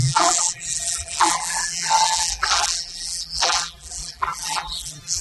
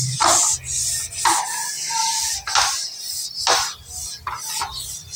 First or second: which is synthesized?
first